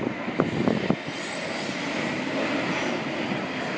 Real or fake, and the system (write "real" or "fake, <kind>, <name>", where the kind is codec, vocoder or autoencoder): real